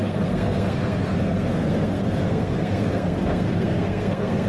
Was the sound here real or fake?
fake